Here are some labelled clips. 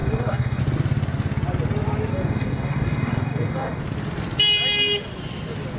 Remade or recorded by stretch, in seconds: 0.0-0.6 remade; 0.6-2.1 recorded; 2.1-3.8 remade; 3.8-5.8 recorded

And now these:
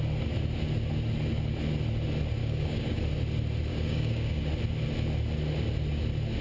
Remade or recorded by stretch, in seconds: 0.0-2.4 recorded; 2.4-3.0 remade; 3.0-3.7 recorded; 3.7-4.4 remade; 4.4-6.4 recorded

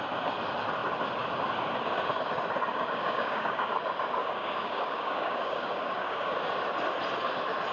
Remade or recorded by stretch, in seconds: 0.0-2.7 recorded; 2.7-3.7 remade; 3.7-4.2 recorded; 4.2-6.3 remade; 6.3-7.7 recorded